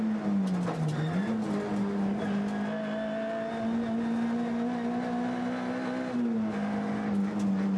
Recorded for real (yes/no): yes